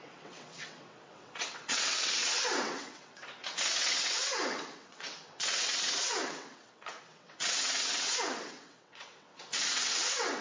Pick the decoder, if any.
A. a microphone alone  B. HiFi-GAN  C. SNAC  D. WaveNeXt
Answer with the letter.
D